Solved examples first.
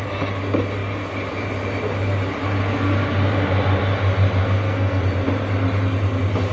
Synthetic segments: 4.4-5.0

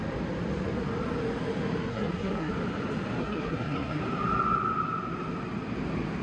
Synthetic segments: 1.9-2.5; 3.2-4.0

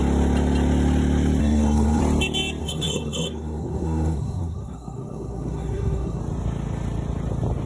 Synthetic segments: 1.4-2.0; 2.6-6.2

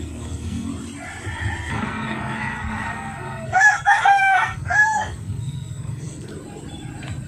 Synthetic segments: 0.0-0.7; 1.7-6.3